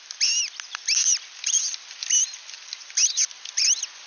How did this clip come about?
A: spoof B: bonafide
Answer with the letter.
B